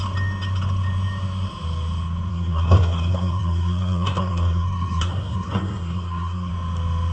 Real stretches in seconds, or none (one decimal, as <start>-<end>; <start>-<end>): 0.0-2.3; 6.5-7.1

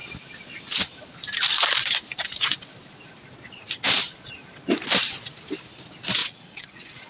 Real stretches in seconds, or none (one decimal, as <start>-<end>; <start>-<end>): 0.0-6.2

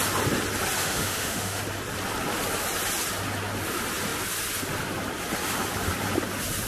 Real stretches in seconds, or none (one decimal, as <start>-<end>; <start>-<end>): 0.0-0.8; 1.6-6.7

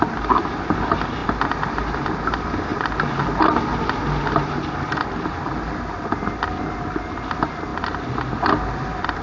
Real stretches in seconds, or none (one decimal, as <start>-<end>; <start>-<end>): 0.0-7.7; 8.3-9.2

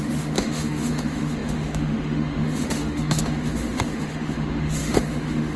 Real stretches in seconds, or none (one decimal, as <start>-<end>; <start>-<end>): none

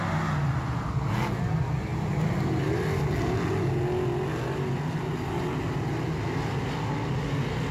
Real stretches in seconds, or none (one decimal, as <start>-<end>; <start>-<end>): 0.0-7.7

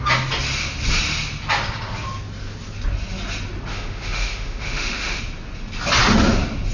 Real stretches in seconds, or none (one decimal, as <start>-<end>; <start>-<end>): 0.0-3.7; 5.2-6.7